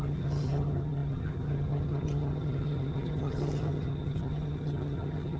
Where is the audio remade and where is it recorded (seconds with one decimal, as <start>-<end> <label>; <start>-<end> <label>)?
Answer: 0.0-5.4 remade